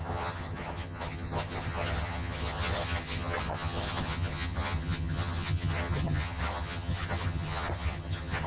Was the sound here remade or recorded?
remade